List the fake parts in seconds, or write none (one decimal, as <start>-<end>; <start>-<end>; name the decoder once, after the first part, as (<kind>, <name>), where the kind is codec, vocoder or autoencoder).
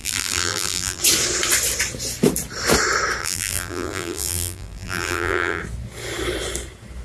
0.0-1.0 (vocoder, BigVGAN v2); 3.2-5.6